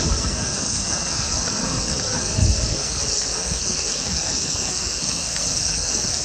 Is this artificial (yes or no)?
yes